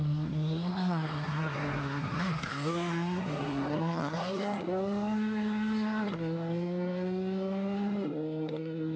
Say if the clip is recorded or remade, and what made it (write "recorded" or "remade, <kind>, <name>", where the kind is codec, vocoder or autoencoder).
remade, codec, SNAC